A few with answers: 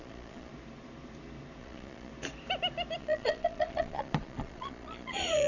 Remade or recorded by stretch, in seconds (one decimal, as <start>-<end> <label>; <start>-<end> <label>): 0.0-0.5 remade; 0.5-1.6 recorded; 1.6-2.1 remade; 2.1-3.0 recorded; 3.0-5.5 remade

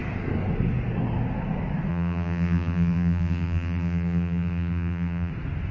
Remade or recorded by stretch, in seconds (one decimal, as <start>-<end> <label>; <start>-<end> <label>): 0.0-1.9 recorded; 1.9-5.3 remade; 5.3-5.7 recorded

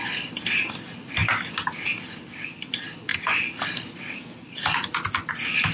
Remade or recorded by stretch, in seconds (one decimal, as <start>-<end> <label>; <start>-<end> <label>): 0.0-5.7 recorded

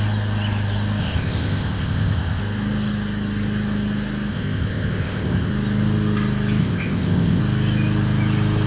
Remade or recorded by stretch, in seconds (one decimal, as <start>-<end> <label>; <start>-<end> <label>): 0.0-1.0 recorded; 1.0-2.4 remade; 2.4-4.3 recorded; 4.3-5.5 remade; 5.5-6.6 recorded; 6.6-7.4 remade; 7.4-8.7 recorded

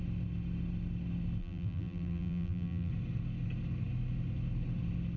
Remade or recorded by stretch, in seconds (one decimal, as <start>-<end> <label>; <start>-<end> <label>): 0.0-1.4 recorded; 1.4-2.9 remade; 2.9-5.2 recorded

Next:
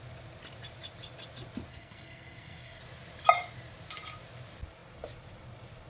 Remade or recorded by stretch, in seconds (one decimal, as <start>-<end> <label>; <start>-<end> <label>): 0.0-1.7 recorded; 1.7-2.8 remade; 2.8-5.9 recorded

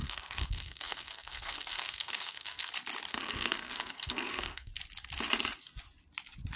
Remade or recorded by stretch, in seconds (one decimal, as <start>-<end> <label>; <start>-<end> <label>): 0.0-2.7 remade; 2.7-3.1 recorded; 3.1-4.7 remade; 4.7-6.6 recorded

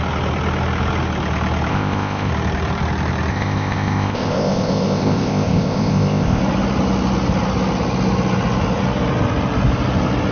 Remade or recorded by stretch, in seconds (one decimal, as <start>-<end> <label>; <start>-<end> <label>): 0.0-1.7 recorded; 1.7-2.3 remade; 2.3-3.3 recorded; 3.3-6.4 remade; 6.4-10.3 recorded